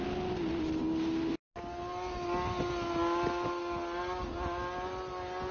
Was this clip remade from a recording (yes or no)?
no